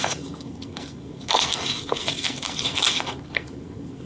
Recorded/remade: remade